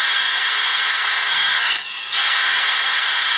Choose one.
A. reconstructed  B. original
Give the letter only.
A